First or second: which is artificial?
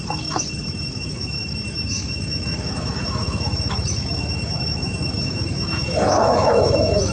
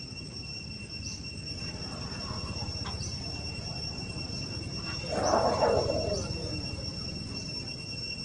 first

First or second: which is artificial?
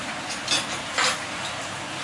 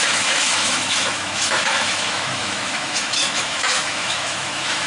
second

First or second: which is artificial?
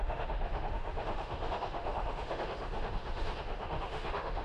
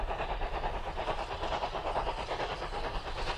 first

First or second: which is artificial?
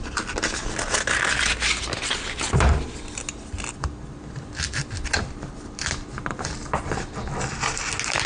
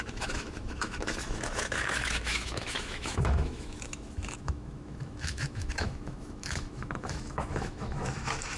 second